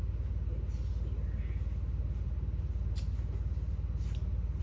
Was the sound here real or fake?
real